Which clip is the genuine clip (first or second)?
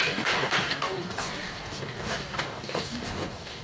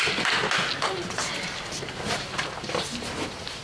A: second